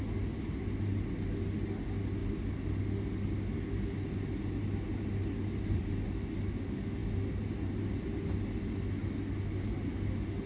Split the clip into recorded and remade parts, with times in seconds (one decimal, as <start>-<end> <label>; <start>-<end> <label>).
0.0-10.5 recorded